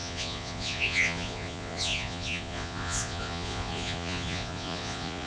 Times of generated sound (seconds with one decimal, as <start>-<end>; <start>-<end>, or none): 0.0-5.3